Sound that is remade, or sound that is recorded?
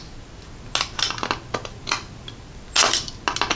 recorded